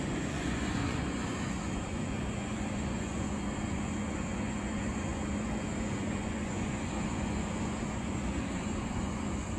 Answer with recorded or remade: remade